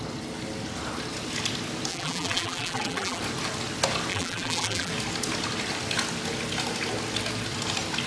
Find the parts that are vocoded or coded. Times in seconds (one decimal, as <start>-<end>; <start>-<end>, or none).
1.9-3.2; 4.1-4.9